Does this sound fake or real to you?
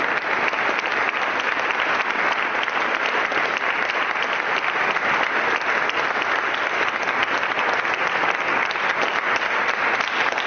fake